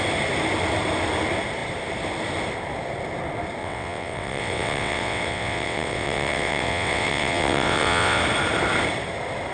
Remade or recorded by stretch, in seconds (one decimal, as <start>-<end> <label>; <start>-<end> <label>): 0.0-3.6 recorded; 3.6-8.2 remade; 8.2-9.5 recorded